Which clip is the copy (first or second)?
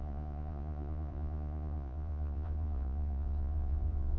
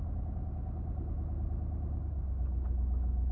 first